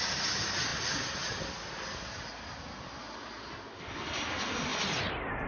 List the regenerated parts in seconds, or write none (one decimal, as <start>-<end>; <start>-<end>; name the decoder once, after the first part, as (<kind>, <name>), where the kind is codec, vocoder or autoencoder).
none

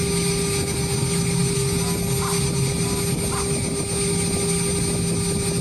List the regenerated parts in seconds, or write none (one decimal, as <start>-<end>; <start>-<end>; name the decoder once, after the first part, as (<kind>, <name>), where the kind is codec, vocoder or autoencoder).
none